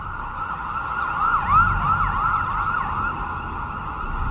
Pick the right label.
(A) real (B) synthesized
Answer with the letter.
A